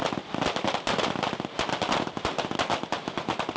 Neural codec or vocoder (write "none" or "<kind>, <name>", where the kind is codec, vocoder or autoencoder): none